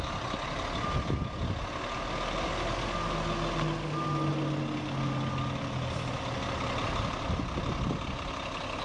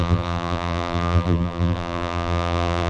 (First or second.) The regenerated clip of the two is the second